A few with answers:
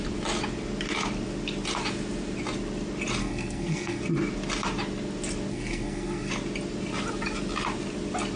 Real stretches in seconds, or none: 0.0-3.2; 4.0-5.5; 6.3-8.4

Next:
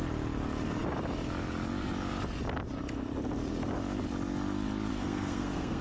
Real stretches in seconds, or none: 0.0-4.9

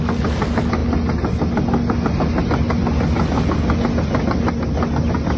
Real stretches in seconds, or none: 0.0-5.4

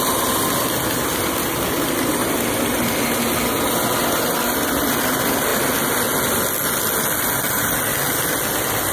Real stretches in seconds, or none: 0.0-8.9

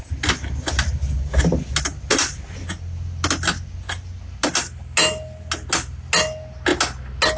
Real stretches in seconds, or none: 0.0-7.4